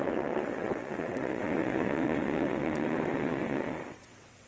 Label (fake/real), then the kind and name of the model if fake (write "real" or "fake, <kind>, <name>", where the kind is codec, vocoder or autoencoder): fake, vocoder, WaveNeXt